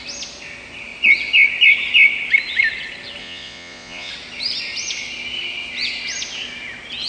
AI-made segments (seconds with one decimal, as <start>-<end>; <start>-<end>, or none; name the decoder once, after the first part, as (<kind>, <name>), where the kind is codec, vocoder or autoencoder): 3.2-4.1 (vocoder, Vocos)